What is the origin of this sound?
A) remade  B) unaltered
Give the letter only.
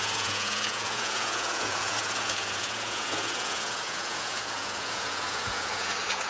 A